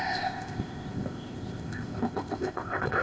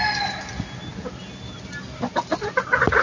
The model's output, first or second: first